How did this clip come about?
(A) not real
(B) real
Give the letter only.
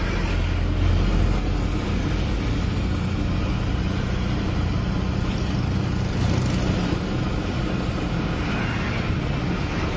B